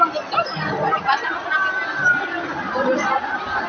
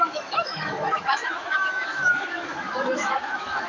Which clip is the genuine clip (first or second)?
first